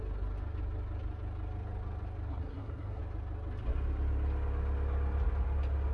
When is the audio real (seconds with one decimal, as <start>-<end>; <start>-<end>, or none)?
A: 0.0-2.3; 3.0-5.9

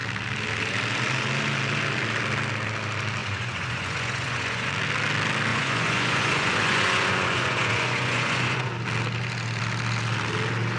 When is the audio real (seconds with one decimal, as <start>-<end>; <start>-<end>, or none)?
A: 0.0-3.2; 4.7-5.5; 8.7-10.8

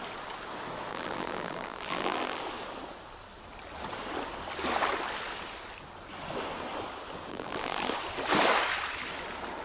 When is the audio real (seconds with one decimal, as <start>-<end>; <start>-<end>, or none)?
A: 0.0-0.9; 2.4-7.3; 7.9-9.6

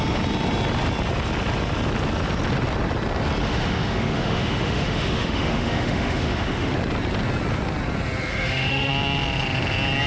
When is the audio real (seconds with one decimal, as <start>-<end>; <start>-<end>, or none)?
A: 0.0-3.4; 6.7-8.3; 8.9-10.1

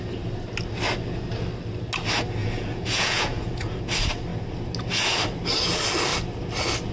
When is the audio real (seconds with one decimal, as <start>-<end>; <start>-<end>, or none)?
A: 0.0-2.4; 3.8-6.9

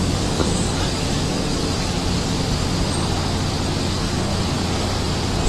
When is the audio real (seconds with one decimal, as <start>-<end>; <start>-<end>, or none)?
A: 1.6-3.8; 4.3-5.5